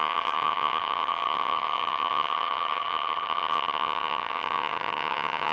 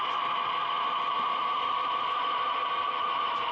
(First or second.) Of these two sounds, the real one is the second